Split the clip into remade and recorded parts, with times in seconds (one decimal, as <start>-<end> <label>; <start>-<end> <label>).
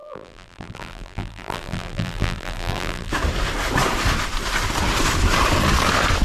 0.0-3.1 remade; 3.1-6.2 recorded